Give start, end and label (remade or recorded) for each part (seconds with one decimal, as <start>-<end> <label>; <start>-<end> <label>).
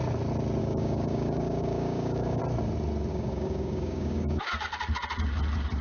0.0-0.6 recorded; 0.6-2.4 remade; 2.4-3.1 recorded; 3.1-4.5 remade; 4.5-5.8 recorded